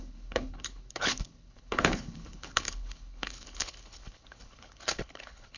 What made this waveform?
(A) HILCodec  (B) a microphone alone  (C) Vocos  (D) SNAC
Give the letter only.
A